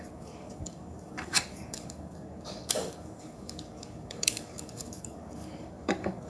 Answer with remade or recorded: remade